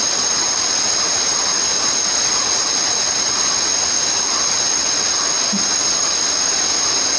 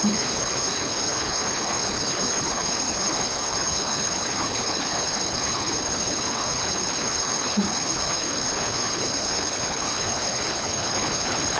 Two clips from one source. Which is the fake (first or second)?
second